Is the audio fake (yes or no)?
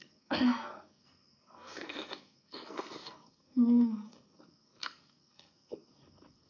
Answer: yes